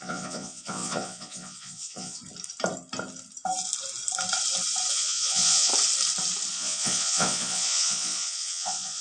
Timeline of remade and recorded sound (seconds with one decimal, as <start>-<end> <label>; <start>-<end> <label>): 0.0-2.2 remade; 2.2-4.9 recorded; 4.9-5.7 remade; 5.7-6.5 recorded; 6.5-9.0 remade